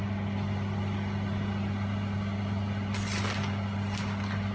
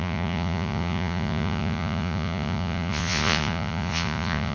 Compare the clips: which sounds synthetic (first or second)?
second